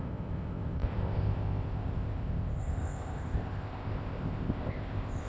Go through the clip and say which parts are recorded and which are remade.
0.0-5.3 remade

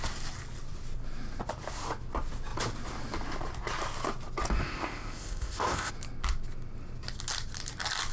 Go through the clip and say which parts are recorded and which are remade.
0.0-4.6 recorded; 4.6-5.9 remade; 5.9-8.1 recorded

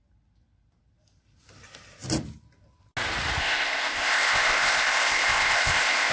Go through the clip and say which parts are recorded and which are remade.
0.0-3.4 recorded; 3.4-6.1 remade